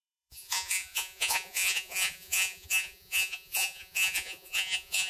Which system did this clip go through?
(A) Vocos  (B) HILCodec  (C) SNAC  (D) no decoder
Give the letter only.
A